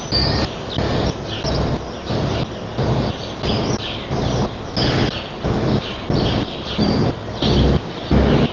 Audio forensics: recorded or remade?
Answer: recorded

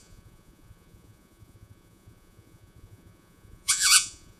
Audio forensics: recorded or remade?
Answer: remade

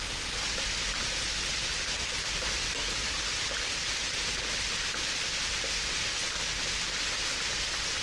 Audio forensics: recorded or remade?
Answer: recorded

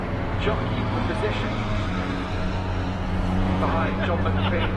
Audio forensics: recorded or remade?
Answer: remade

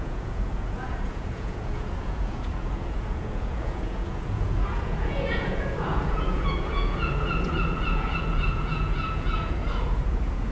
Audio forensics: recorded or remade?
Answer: remade